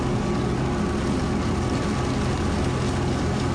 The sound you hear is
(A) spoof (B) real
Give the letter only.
B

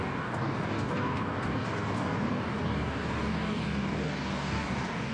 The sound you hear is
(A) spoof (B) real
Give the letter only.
A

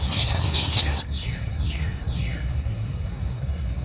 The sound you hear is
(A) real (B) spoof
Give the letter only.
B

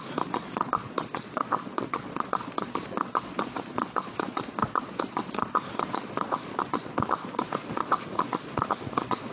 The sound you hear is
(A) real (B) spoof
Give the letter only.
B